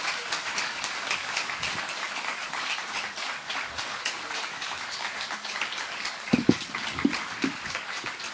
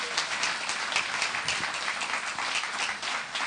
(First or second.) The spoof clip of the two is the first